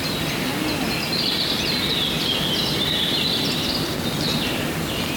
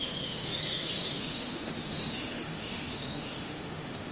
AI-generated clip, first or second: second